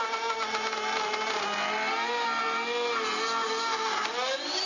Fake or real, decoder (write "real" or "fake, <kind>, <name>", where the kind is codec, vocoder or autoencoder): real